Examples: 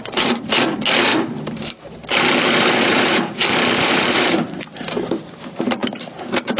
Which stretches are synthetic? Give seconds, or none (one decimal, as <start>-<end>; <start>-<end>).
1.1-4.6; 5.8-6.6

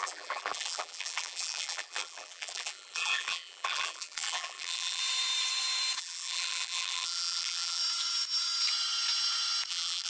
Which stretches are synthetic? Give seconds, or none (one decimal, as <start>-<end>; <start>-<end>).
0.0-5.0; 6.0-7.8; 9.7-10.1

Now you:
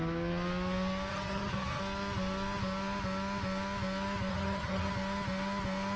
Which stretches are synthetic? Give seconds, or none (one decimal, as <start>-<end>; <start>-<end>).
1.1-1.8; 4.3-4.9